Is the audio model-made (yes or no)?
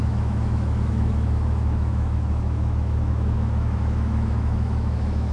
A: yes